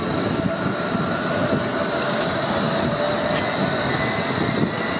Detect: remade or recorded recorded